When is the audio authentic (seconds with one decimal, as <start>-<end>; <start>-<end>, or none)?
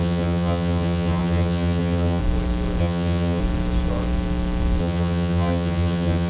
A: 2.2-2.8; 3.4-4.8